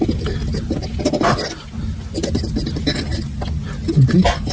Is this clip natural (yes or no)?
yes